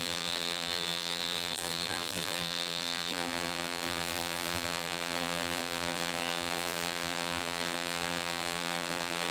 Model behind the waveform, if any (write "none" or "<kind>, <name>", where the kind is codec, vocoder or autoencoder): vocoder, BigVGAN v2